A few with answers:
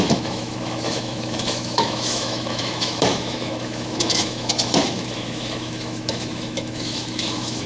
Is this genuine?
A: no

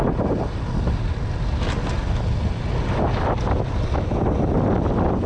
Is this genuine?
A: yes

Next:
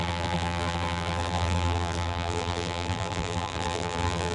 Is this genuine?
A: no